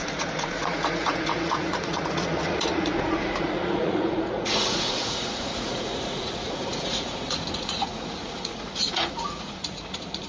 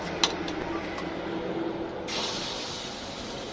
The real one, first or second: second